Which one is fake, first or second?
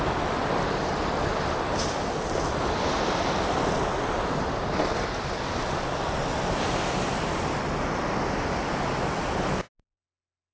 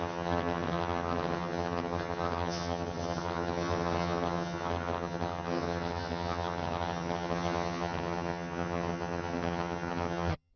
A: second